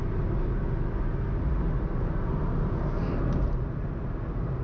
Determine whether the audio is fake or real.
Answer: real